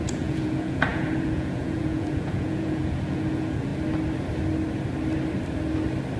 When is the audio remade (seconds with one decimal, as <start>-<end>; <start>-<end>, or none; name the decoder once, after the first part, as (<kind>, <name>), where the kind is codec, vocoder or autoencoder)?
0.0-3.7 (vocoder, Vocos)